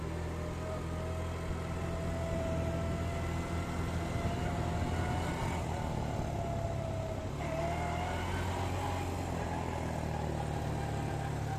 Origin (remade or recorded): recorded